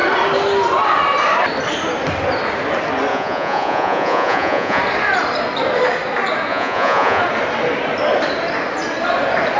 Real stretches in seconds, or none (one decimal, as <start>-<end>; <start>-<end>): 0.0-3.1; 4.8-6.5; 7.2-9.6